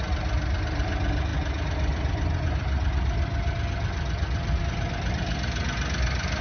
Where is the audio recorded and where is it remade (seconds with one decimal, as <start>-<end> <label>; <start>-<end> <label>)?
0.0-6.4 recorded